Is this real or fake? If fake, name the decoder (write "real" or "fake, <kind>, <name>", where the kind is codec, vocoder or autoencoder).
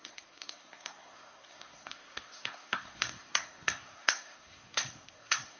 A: fake, codec, SNAC